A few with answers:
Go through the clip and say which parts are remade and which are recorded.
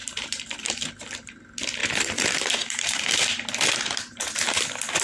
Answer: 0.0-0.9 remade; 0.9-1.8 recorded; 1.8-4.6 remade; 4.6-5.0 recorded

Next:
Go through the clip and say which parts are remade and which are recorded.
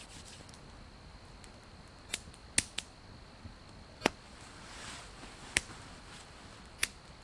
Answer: 0.0-7.2 recorded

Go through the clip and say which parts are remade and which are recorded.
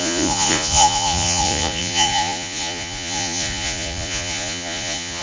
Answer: 0.0-5.2 remade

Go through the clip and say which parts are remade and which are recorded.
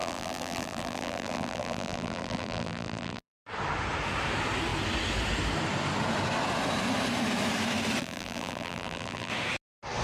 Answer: 0.0-3.4 remade; 3.4-8.0 recorded; 8.0-9.3 remade; 9.3-10.0 recorded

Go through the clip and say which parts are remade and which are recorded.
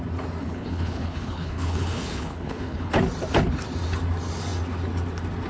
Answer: 0.0-0.4 recorded; 0.4-2.9 remade; 2.9-5.5 recorded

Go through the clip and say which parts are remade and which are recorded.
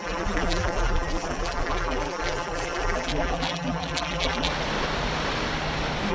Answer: 0.0-4.5 remade; 4.5-6.1 recorded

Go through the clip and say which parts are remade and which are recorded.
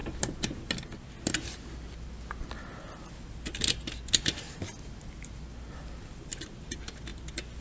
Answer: 0.0-7.6 recorded